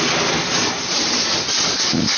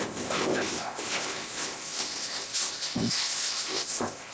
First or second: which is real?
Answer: first